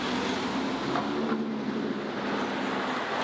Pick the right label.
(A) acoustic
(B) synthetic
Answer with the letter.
A